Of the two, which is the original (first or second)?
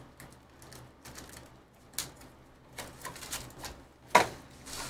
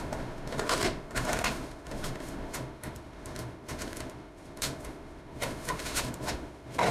first